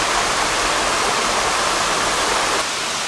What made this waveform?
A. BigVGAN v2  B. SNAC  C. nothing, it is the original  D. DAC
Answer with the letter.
C